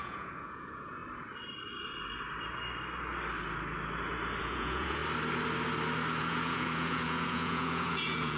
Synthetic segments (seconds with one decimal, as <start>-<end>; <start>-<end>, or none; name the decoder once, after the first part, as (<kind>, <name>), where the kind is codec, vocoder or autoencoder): 0.0-1.0 (vocoder, Vocos); 4.4-5.0; 6.2-8.4